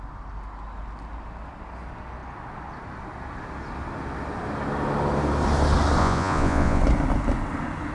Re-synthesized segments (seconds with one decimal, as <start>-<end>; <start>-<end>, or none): 6.0-6.8